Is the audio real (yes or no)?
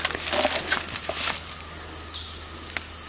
yes